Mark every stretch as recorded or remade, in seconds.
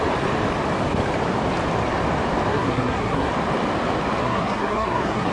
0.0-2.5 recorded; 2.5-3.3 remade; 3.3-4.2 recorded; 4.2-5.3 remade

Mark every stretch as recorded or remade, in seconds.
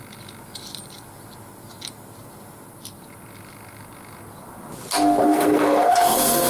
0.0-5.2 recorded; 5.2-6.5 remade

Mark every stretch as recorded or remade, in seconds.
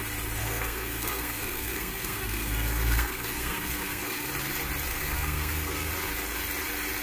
0.0-0.4 recorded; 0.4-4.3 remade; 4.3-4.9 recorded; 4.9-5.9 remade; 5.9-7.0 recorded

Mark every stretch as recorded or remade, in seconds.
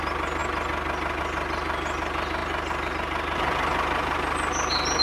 0.0-5.0 recorded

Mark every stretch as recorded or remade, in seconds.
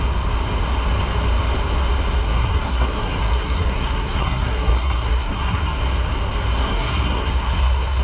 0.0-2.2 recorded; 2.2-5.8 remade; 5.8-6.6 recorded; 6.6-8.0 remade